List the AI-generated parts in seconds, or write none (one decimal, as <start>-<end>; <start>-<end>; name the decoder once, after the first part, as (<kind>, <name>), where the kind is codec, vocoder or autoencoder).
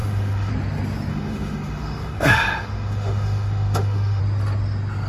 0.0-0.5 (autoencoder, DAC-VAE); 1.1-4.2